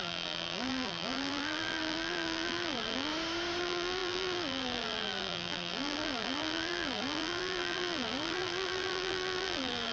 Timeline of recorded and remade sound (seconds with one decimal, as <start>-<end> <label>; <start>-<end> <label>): 0.0-3.1 remade; 3.1-3.6 recorded; 3.6-9.9 remade